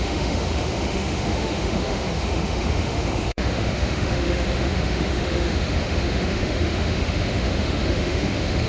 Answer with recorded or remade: remade